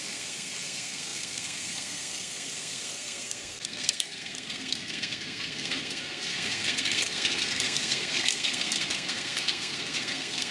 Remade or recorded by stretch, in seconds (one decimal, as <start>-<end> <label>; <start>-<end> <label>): 0.0-10.5 remade